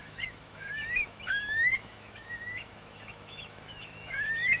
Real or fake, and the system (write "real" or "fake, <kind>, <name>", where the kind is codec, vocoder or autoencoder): fake, autoencoder, DAC-VAE